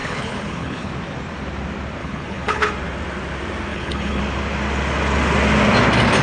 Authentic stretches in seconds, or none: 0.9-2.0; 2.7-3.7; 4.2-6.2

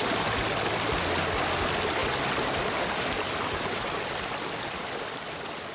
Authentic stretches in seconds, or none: 0.0-5.7

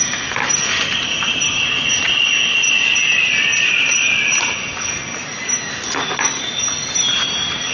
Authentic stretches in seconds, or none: 0.0-7.7

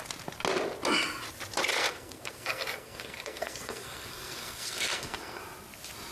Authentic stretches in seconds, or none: 0.0-1.7; 5.4-6.1

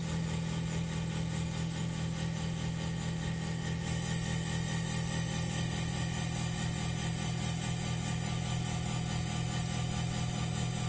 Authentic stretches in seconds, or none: 0.0-10.9

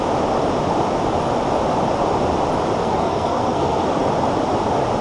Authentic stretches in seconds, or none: 0.0-2.8; 3.9-5.0

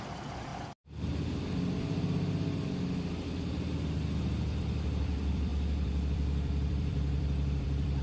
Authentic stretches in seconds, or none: 0.5-4.6